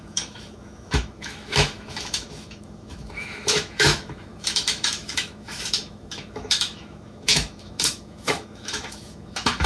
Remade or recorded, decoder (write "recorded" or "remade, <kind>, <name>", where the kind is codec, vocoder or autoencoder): remade, autoencoder, DAC-VAE